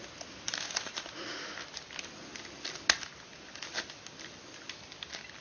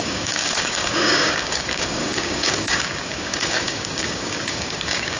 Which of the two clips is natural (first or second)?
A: first